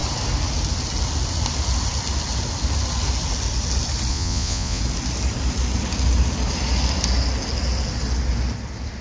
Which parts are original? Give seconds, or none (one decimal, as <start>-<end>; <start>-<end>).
0.0-4.1; 4.8-9.0